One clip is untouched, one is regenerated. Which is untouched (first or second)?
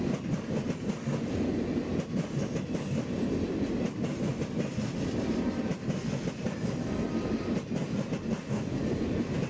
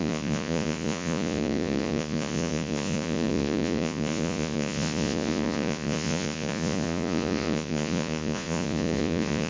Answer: first